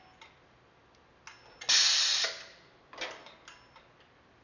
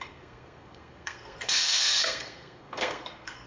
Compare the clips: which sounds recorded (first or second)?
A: first